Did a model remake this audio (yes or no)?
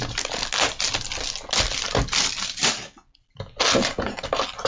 no